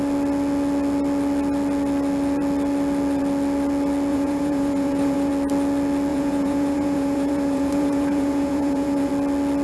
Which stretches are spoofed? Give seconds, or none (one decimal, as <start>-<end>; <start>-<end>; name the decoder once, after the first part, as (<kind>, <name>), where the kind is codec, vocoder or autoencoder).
4.1-5.3 (vocoder, Vocos); 6.1-9.1